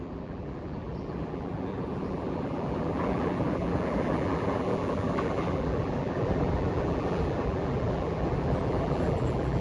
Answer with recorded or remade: remade